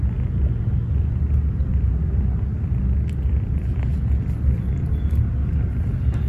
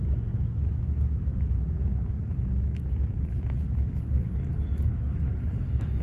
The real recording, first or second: first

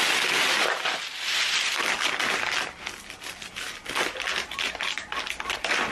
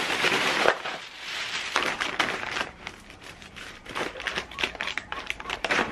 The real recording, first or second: first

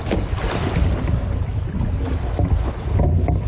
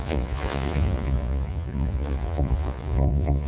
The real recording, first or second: first